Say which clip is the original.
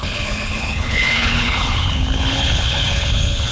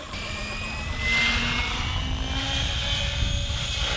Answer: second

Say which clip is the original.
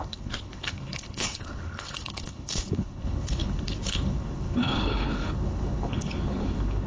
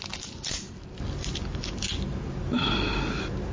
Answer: second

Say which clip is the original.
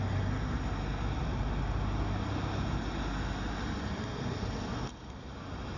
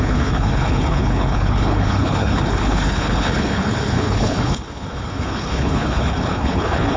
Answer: first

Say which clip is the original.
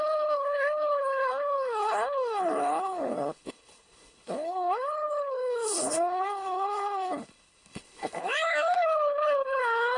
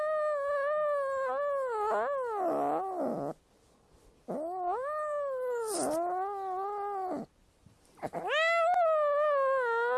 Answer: second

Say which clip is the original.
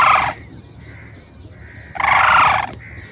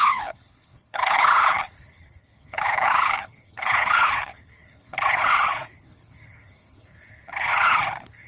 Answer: first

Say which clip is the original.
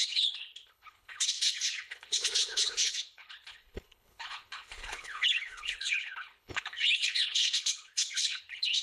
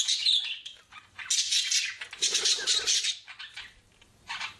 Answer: second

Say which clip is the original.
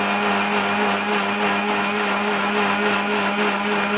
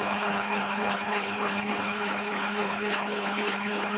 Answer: first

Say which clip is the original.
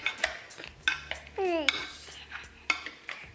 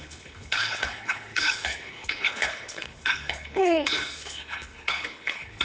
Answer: first